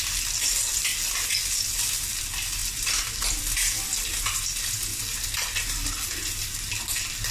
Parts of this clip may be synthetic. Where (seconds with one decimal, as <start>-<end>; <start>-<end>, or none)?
none